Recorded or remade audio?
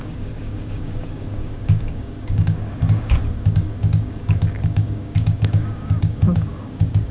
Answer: remade